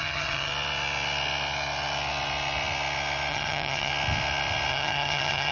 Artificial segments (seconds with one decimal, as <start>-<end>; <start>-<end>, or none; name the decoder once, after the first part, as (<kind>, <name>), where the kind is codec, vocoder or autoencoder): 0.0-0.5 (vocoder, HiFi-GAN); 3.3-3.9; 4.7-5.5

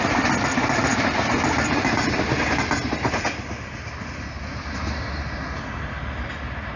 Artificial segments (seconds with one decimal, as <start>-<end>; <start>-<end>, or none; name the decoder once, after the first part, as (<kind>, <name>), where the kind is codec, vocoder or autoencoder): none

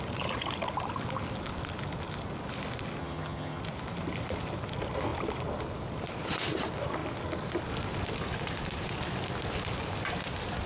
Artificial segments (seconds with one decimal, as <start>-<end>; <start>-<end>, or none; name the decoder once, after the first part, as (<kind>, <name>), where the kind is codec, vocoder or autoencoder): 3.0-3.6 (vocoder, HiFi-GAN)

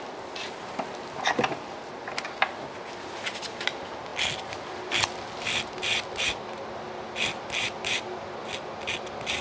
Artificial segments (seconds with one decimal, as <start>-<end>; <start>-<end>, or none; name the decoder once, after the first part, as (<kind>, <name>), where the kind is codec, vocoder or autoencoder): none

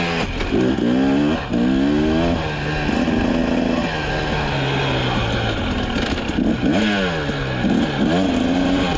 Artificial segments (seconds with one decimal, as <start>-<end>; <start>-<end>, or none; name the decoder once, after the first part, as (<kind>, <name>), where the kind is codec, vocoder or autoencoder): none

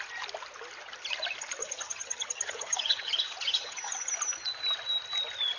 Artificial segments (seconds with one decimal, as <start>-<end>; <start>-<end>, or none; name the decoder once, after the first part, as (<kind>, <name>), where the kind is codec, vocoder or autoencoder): 1.6-4.1 (vocoder, HiFi-GAN)

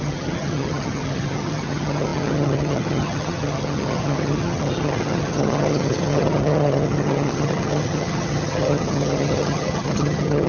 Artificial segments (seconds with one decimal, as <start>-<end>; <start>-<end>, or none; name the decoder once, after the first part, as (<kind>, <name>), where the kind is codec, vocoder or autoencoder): 0.0-10.5 (vocoder, HiFi-GAN)

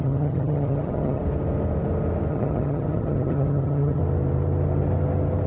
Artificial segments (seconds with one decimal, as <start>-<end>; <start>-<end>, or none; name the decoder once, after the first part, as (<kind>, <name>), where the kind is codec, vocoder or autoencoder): 0.0-1.2 (vocoder, HiFi-GAN); 2.3-4.0